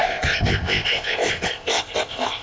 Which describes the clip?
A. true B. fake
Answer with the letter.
B